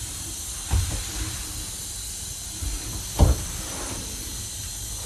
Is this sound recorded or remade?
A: remade